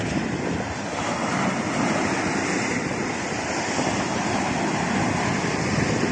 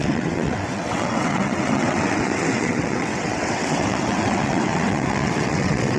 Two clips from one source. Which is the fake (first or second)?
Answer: second